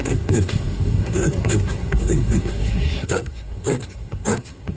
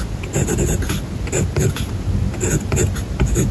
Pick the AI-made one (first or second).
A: first